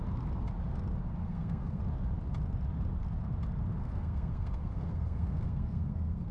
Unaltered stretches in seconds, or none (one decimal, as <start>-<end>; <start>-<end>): 0.0-1.2; 1.8-3.8